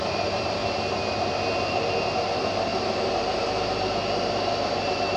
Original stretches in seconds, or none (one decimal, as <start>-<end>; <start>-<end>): 0.6-1.7